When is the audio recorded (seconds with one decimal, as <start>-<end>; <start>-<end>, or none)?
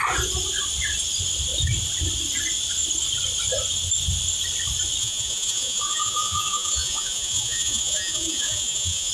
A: 0.0-5.0